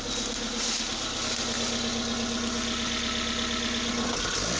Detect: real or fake real